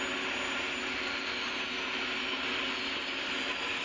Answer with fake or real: real